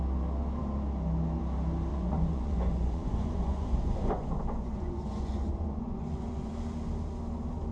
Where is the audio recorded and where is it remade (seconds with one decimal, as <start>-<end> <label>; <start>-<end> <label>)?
0.0-1.9 recorded; 1.9-6.5 remade; 6.5-7.7 recorded